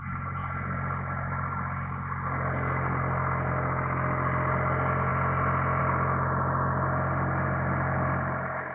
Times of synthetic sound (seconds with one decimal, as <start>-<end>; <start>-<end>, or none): none